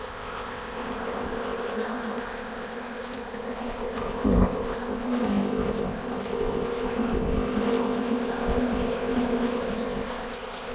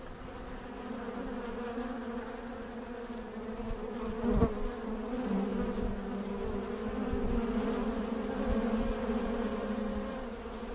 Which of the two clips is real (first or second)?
second